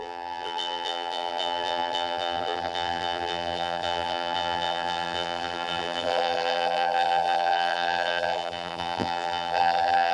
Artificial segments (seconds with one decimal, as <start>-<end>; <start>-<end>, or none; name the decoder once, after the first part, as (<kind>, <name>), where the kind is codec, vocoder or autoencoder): 0.0-10.1 (vocoder, BigVGAN v2)